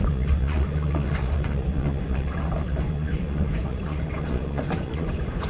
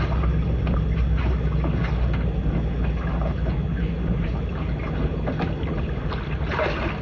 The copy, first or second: first